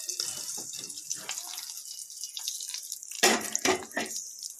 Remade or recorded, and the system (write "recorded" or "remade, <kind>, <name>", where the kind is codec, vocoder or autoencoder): recorded